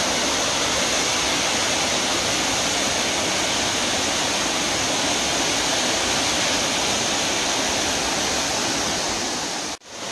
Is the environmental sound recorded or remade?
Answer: recorded